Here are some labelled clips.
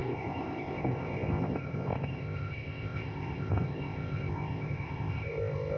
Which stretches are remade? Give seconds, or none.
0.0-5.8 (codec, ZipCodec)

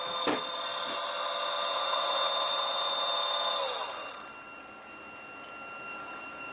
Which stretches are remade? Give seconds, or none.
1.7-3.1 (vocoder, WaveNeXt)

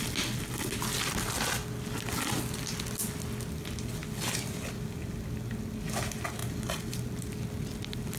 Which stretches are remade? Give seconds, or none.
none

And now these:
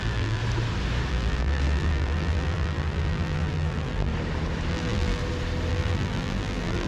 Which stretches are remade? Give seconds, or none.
0.0-0.4 (vocoder, BigVGAN v2); 1.1-4.1; 4.7-5.2; 5.7-6.9